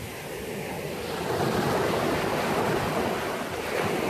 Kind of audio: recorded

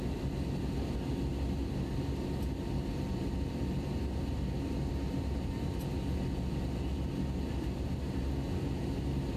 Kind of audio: recorded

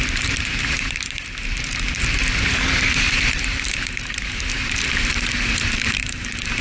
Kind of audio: remade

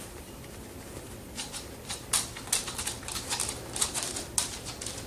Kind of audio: remade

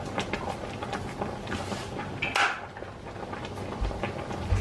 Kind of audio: recorded